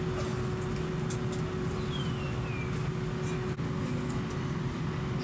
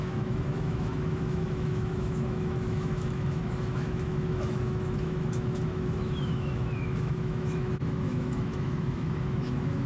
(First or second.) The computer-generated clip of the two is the second